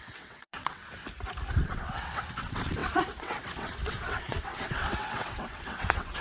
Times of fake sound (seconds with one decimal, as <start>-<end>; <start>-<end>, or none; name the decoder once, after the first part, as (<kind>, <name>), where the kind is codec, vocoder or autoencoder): 0.0-0.8 (vocoder, WaveNeXt); 1.5-6.2